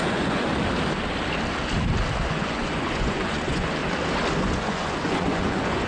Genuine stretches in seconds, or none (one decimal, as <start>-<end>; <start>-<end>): 0.5-2.2; 3.8-4.4